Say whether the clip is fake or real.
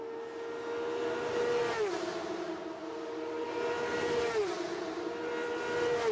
real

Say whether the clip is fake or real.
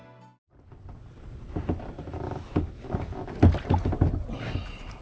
real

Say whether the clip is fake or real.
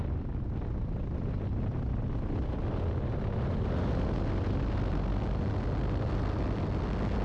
real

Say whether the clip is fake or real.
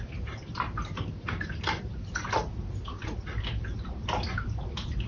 real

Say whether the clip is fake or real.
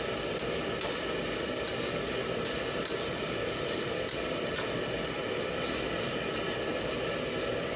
real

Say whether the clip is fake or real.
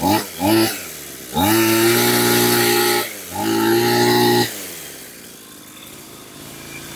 real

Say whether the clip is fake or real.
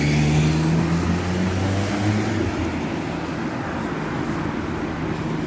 real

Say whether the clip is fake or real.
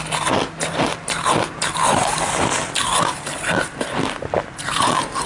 real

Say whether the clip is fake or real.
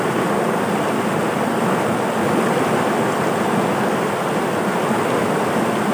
real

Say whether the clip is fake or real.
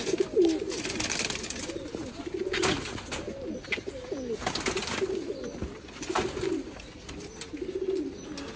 real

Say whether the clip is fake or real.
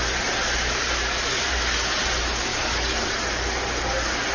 real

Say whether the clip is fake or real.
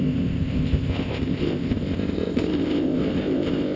fake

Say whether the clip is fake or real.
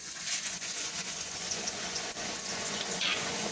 fake